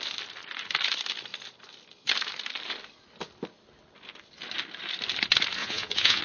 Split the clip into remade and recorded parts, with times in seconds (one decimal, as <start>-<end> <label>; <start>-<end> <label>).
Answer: 0.0-5.6 recorded; 5.6-6.2 remade